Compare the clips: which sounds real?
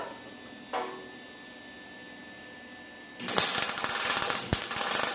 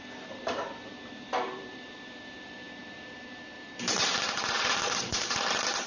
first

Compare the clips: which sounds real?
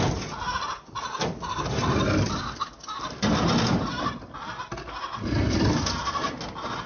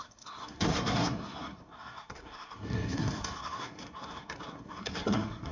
first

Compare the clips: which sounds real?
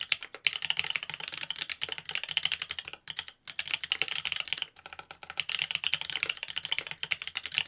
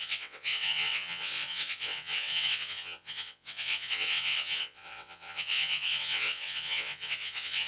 first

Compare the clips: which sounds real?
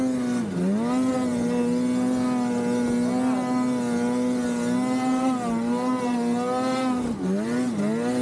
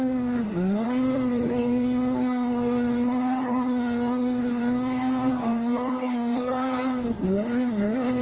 first